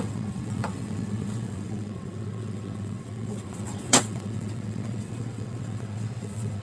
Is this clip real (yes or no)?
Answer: no